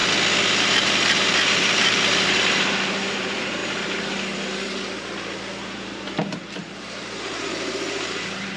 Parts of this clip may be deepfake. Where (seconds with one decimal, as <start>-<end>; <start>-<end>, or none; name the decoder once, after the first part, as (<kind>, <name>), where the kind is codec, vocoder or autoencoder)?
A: 0.6-3.6 (vocoder, BigVGAN v2); 5.6-8.6